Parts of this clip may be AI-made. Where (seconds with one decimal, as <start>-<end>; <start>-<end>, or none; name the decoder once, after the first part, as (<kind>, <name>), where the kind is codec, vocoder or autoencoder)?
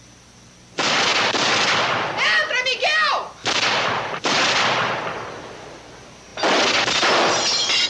none